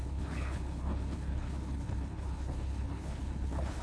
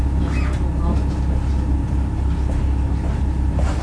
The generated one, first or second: first